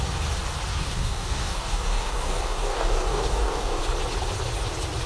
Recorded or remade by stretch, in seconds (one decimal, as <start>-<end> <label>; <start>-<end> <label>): 0.0-0.7 recorded; 0.7-3.8 remade; 3.8-5.1 recorded